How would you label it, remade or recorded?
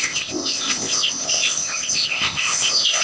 remade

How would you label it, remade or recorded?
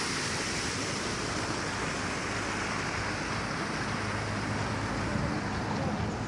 recorded